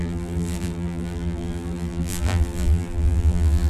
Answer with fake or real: fake